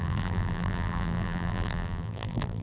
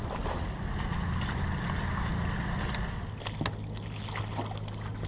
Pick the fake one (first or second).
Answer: first